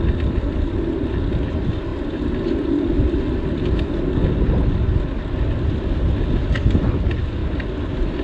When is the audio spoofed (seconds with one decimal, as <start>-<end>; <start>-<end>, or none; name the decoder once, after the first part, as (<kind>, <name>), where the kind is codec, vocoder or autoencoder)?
none